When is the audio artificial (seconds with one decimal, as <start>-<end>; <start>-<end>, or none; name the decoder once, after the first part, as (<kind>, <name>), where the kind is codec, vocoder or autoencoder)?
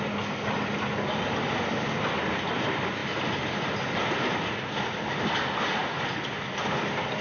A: none